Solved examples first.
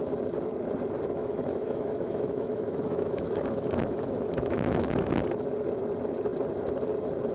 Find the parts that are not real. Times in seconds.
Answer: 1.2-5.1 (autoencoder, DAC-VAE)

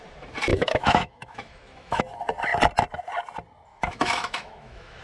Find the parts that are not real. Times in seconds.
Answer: 0.5-2.0 (autoencoder, DAC-VAE); 3.7-5.0